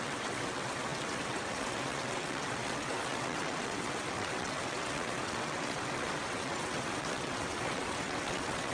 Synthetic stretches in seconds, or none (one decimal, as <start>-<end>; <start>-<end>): 0.0-8.7

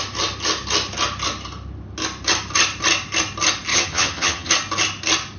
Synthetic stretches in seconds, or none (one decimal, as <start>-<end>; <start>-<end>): 3.7-4.5